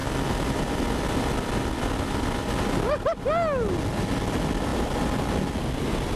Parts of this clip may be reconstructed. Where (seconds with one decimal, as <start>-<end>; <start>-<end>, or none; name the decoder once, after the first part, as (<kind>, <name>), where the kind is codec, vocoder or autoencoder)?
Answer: none